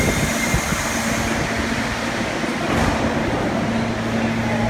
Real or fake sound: real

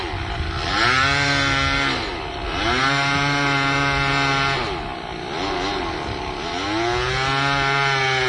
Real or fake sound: real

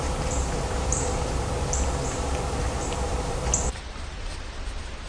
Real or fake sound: fake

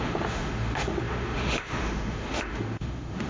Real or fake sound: fake